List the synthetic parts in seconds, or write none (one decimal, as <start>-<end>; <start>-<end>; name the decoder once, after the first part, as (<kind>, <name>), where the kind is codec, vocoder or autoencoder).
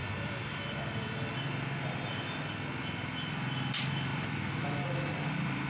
4.1-5.3 (vocoder, BigVGAN v2)